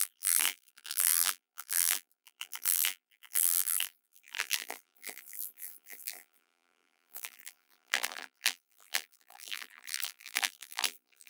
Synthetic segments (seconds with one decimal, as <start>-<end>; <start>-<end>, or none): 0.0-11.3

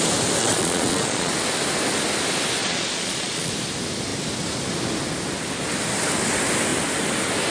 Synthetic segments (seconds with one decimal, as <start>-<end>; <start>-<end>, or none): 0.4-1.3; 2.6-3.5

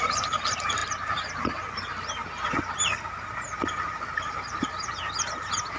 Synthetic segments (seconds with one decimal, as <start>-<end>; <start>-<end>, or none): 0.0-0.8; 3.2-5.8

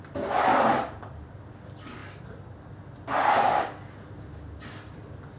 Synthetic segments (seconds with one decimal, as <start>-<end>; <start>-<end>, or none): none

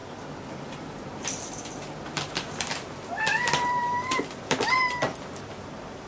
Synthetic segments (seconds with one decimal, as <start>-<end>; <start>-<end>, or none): 0.0-6.1